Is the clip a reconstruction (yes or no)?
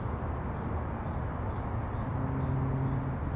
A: no